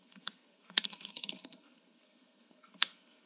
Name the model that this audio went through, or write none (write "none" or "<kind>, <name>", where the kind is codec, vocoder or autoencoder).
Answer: codec, SNAC